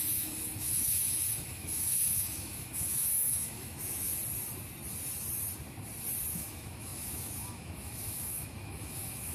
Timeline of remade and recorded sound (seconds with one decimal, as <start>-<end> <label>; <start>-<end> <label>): 0.0-4.1 remade; 4.1-6.3 recorded; 6.3-9.3 remade